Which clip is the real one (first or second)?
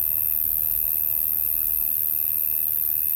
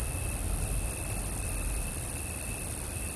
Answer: first